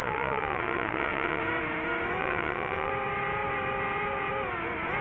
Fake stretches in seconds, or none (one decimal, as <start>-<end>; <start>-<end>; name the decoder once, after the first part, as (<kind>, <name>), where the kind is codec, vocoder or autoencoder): 0.0-1.4 (vocoder, WaveNeXt); 2.2-2.9